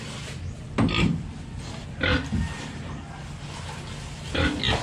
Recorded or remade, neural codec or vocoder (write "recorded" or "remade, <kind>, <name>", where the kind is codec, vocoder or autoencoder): recorded